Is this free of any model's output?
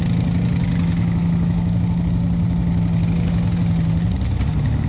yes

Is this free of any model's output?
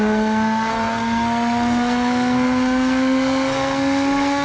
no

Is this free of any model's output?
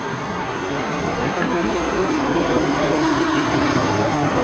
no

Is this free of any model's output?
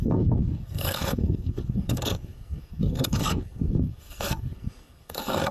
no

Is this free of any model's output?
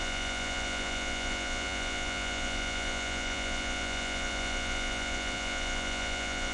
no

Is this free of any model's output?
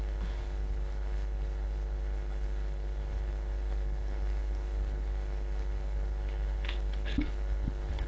no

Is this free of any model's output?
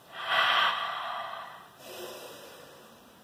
no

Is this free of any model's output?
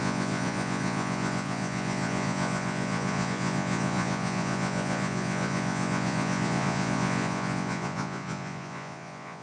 no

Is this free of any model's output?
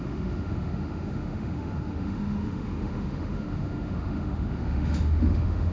no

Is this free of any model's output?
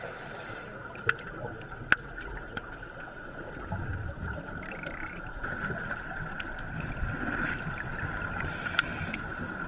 yes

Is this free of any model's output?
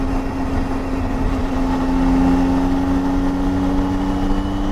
yes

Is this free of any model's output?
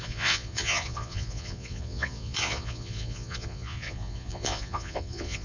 no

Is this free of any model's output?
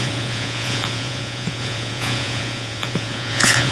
no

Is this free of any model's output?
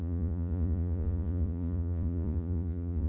no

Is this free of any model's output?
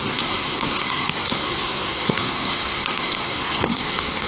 no